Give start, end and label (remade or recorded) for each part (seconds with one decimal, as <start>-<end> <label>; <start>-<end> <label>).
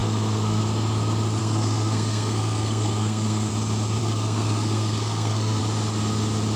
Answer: 0.0-0.6 remade; 0.6-1.4 recorded; 1.4-3.5 remade; 3.5-4.0 recorded; 4.0-5.6 remade; 5.6-6.6 recorded